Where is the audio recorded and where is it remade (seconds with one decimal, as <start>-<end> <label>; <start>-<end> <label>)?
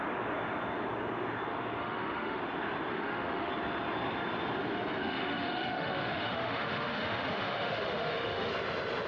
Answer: 0.0-1.8 recorded; 1.8-2.4 remade; 2.4-2.9 recorded; 2.9-3.5 remade; 3.5-5.0 recorded; 5.0-8.5 remade; 8.5-9.1 recorded